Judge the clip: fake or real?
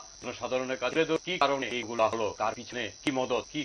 real